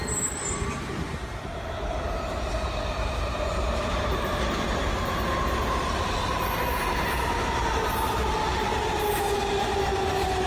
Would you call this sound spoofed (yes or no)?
no